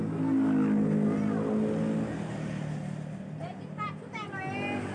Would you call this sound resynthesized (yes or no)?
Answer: no